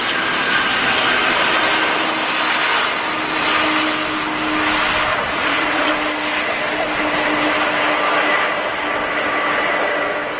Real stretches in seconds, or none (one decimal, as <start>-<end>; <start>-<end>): 0.0-5.1; 5.9-10.4